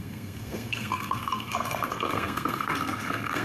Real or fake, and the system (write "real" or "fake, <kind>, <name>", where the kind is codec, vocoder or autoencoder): fake, codec, SNAC